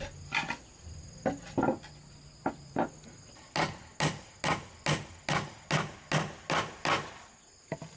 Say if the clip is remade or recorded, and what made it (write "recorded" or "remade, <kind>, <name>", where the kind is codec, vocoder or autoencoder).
recorded